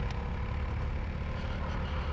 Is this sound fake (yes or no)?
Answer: no